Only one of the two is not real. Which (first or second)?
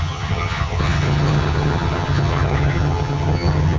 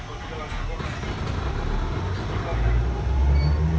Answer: first